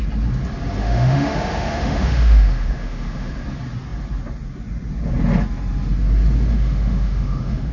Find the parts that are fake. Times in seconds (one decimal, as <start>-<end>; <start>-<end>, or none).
0.8-3.3; 6.5-7.7